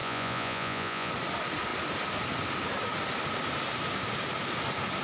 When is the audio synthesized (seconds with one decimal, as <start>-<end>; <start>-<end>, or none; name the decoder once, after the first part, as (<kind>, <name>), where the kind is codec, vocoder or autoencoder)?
0.0-1.1 (vocoder, Vocos)